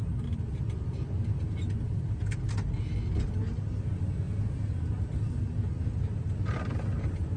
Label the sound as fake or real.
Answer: real